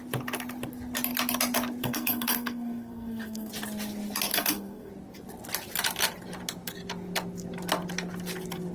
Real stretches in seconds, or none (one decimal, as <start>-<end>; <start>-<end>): 0.0-1.8; 3.5-4.3; 4.9-8.7